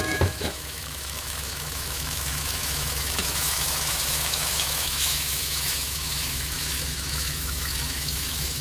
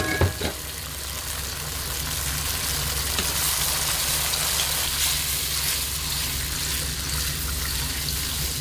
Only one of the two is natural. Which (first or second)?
second